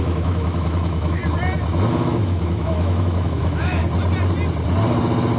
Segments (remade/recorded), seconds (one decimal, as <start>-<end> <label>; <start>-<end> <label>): 0.0-1.2 remade; 1.2-1.9 recorded; 1.9-3.8 remade; 3.8-5.4 recorded